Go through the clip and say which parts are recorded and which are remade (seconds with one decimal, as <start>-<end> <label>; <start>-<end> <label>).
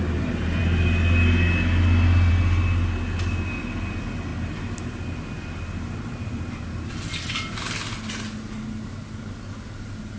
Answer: 0.0-10.2 recorded